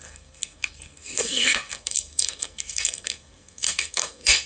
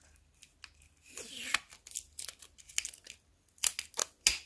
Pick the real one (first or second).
second